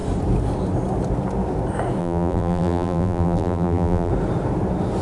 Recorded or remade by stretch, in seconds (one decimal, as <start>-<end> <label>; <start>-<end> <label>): 0.0-2.0 recorded; 2.0-4.1 remade; 4.1-5.0 recorded